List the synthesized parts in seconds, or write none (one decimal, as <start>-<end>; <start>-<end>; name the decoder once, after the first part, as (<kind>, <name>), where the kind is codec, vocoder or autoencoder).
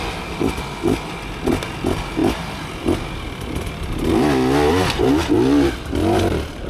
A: none